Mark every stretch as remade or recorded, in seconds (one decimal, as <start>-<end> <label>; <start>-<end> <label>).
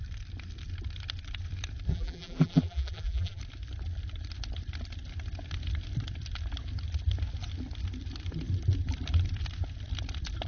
0.0-1.9 recorded; 1.9-3.4 remade; 3.4-10.5 recorded